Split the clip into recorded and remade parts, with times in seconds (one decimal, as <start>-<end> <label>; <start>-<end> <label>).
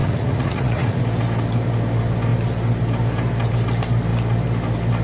0.0-1.0 remade; 1.0-5.0 recorded